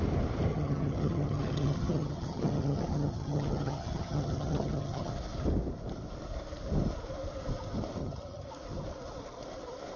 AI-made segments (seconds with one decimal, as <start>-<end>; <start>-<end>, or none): 0.5-5.1; 8.0-8.5